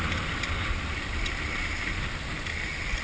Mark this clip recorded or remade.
remade